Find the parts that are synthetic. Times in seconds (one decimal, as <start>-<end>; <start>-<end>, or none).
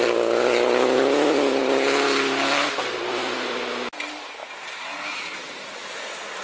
none